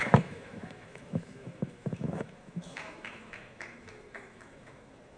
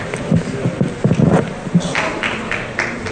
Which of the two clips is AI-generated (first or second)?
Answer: first